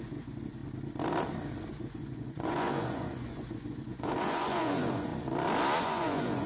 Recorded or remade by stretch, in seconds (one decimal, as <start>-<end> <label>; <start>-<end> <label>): 0.0-0.6 remade; 0.6-1.7 recorded; 1.7-5.1 remade; 5.1-5.8 recorded; 5.8-6.5 remade